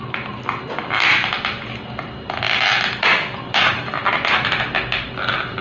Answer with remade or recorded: recorded